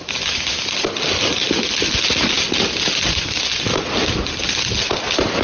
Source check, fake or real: real